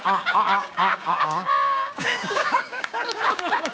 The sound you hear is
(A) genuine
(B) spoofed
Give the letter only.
B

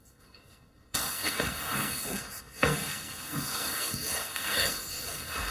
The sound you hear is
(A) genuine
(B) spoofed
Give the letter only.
B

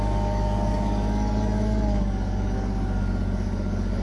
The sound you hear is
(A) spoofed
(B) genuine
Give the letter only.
A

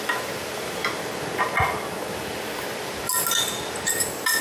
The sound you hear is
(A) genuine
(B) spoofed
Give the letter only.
A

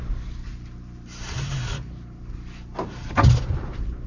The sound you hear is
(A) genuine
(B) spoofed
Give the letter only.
A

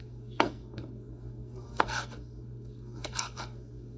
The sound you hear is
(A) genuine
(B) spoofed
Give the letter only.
B